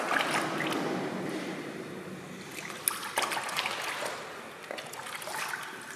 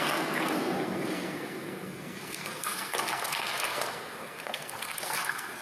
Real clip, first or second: first